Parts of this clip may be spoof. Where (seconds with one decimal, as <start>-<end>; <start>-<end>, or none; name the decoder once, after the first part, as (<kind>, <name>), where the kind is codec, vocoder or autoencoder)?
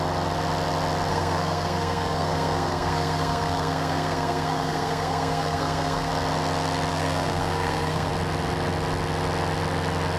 1.1-6.1 (codec, SNAC); 6.9-8.1